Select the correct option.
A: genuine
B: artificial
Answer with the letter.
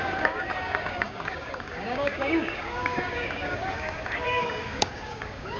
B